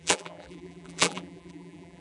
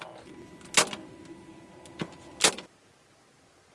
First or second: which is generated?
first